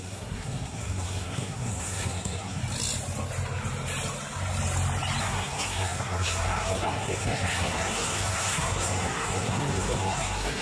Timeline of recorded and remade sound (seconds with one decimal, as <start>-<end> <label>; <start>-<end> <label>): 0.0-2.6 remade; 2.6-5.2 recorded; 5.2-10.6 remade